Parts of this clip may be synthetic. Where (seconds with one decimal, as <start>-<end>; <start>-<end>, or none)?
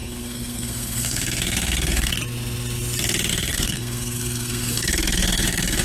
0.0-2.1; 3.3-5.8